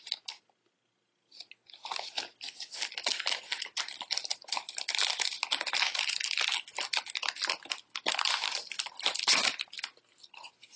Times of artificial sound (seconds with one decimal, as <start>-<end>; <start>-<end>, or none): none